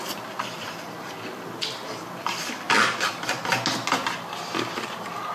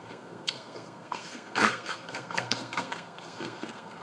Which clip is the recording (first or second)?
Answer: first